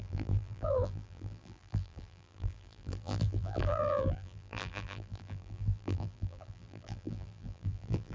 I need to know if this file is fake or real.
fake